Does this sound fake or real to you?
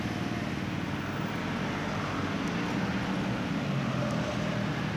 real